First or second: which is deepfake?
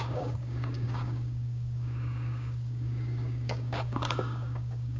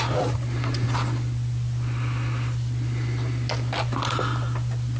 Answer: first